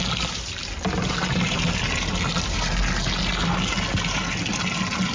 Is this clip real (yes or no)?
yes